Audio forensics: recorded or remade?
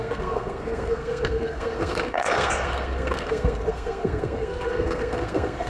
remade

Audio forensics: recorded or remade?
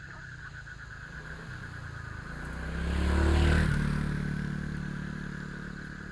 recorded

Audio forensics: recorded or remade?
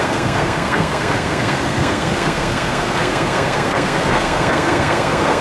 remade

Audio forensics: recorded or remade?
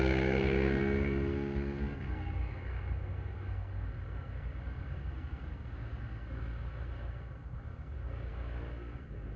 remade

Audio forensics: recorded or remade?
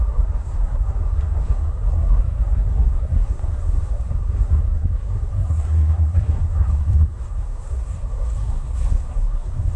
remade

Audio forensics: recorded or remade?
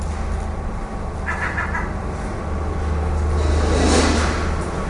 recorded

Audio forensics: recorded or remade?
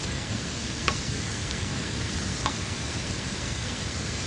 remade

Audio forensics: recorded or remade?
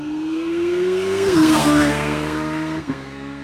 remade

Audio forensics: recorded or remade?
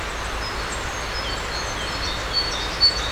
recorded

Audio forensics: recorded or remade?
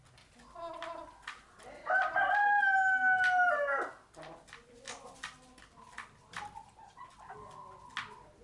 recorded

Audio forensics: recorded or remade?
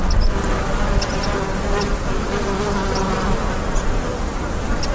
recorded